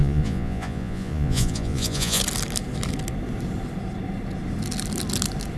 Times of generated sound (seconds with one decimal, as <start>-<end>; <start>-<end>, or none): 0.0-2.2